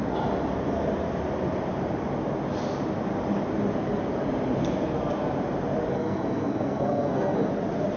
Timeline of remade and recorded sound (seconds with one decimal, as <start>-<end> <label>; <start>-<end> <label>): 0.0-5.9 recorded; 5.9-7.5 remade; 7.5-8.0 recorded